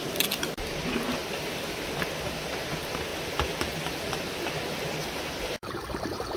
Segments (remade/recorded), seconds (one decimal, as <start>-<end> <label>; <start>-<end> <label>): 0.0-1.2 recorded; 1.2-1.8 remade; 1.8-5.0 recorded; 5.0-6.4 remade

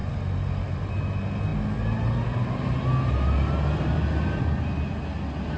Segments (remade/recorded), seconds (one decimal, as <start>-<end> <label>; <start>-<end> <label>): 0.0-5.6 recorded